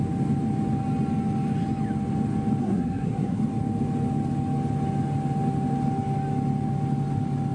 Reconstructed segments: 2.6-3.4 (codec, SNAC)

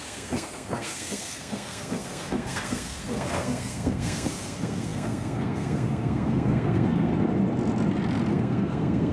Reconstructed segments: 0.0-7.1 (codec, SNAC); 8.3-9.1